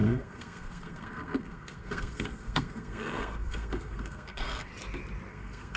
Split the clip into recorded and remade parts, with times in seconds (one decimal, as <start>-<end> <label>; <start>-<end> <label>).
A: 0.0-4.7 remade; 4.7-5.3 recorded; 5.3-5.8 remade